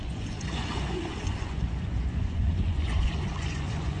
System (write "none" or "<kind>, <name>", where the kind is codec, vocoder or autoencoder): vocoder, Vocos